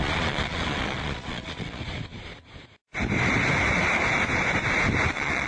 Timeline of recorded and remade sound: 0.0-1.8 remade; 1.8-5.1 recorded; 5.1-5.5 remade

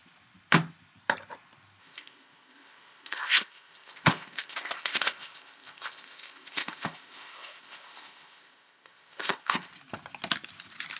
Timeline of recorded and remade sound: 0.0-1.8 recorded; 1.8-9.7 remade; 9.7-11.0 recorded

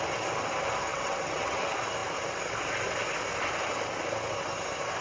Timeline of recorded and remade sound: 0.0-0.9 recorded; 0.9-1.6 remade; 1.6-5.0 recorded